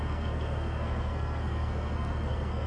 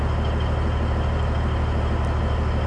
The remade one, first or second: first